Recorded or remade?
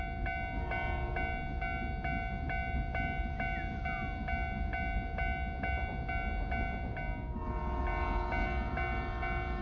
recorded